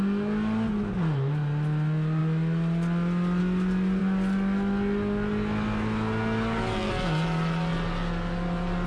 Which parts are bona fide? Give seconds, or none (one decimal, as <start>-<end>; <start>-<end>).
0.0-8.9